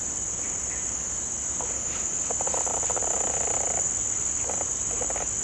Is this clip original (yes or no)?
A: yes